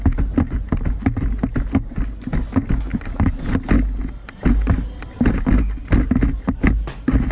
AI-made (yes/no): no